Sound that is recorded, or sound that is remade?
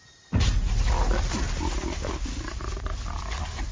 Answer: recorded